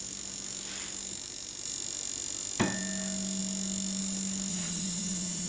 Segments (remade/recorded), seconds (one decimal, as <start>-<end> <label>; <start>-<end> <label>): 0.0-4.5 recorded; 4.5-5.5 remade